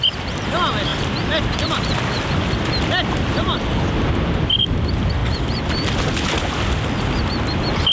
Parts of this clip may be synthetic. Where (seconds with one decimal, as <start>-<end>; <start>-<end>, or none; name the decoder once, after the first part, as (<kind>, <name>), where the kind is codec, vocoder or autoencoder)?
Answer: none